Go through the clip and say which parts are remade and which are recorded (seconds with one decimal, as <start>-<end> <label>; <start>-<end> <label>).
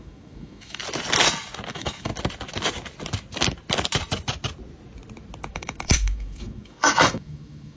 0.0-0.8 remade; 0.8-1.7 recorded; 1.7-2.1 remade; 2.1-5.5 recorded; 5.5-7.8 remade